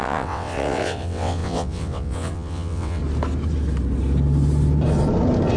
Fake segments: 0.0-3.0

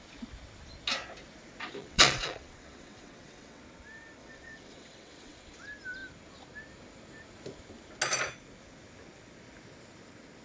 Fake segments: 1.8-3.6; 4.2-5.4

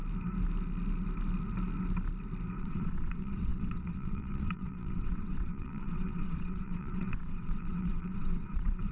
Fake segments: 2.6-8.9

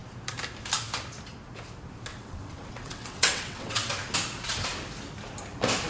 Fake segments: 2.1-3.9